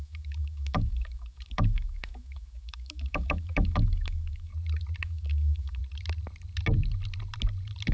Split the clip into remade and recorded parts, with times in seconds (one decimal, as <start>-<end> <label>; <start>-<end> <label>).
0.0-4.5 remade; 4.5-5.0 recorded; 5.0-5.8 remade; 5.8-7.9 recorded